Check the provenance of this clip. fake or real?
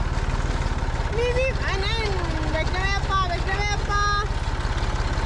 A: real